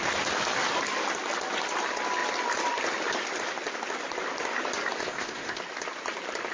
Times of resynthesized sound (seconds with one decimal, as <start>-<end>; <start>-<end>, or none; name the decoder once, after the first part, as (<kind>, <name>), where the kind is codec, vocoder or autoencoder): 5.0-5.6 (codec, ZipCodec)